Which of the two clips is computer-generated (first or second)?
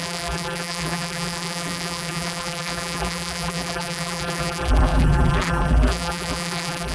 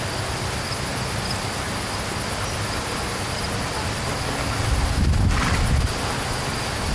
first